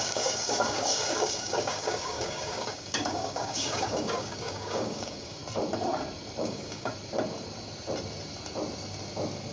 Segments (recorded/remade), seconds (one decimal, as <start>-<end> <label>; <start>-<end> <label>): 0.0-5.4 remade; 5.4-6.4 recorded; 6.4-6.9 remade; 6.9-9.5 recorded